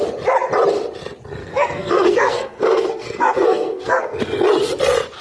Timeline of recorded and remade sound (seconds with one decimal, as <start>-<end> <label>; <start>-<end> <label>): 0.0-1.4 recorded; 1.4-4.2 remade; 4.2-5.2 recorded